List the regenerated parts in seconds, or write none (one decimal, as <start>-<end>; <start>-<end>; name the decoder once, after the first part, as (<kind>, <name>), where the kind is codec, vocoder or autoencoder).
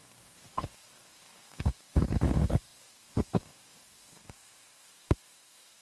0.0-5.8 (codec, DAC)